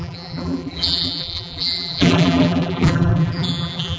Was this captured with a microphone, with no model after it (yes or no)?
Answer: no